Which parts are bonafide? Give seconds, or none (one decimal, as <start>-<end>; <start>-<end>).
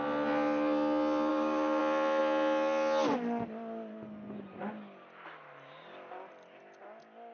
0.0-1.3; 1.8-7.3